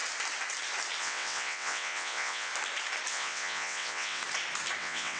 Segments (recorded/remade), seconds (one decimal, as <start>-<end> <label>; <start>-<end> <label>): 0.0-1.0 recorded; 1.0-2.5 remade; 2.5-3.1 recorded; 3.1-4.2 remade; 4.2-4.8 recorded; 4.8-5.2 remade